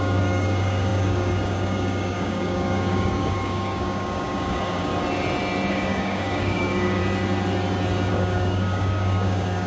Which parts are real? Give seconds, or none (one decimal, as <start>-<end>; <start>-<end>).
4.9-5.7; 7.0-8.1